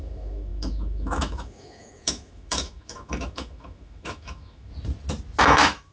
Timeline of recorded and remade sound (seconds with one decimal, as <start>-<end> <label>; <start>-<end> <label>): 0.0-4.7 remade; 4.7-5.4 recorded; 5.4-5.9 remade